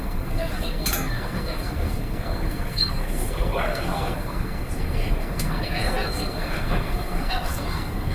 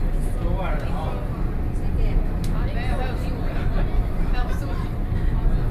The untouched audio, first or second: second